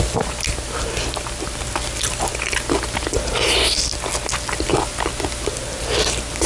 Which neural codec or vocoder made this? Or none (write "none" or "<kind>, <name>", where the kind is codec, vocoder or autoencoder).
none